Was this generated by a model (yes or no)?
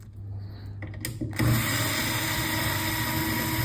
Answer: no